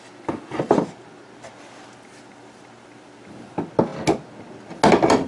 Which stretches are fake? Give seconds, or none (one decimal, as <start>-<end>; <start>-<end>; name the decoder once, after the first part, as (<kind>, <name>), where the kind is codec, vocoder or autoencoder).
none